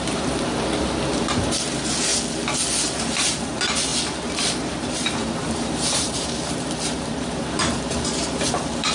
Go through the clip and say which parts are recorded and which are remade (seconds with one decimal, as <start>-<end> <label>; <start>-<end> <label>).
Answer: 0.0-2.1 remade; 2.1-3.0 recorded; 3.0-3.9 remade; 3.9-4.4 recorded; 4.4-8.9 remade